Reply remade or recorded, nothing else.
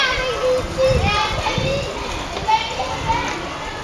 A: recorded